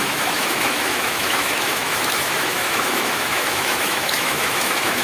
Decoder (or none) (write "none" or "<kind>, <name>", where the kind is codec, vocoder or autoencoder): autoencoder, DAC-VAE